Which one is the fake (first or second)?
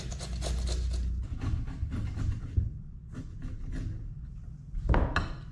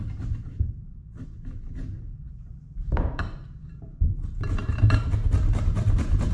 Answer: second